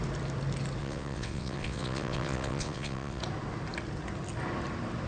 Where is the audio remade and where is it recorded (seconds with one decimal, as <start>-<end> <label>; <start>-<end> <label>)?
0.0-0.8 recorded; 0.8-3.2 remade; 3.2-5.1 recorded